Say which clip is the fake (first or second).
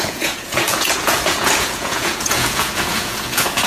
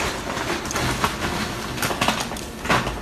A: first